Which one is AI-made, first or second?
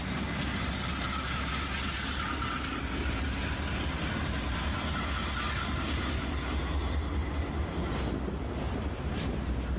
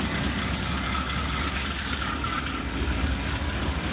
second